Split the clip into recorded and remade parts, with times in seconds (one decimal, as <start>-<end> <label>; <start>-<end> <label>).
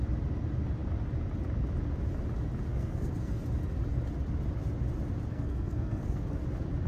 0.0-2.7 recorded; 2.7-3.4 remade; 3.4-5.3 recorded; 5.3-6.4 remade; 6.4-6.9 recorded